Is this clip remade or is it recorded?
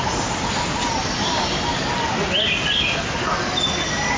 recorded